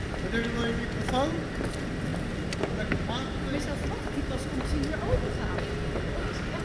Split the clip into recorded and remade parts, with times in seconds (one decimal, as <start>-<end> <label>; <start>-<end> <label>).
0.0-6.6 recorded